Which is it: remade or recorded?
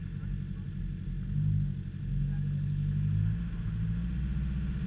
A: recorded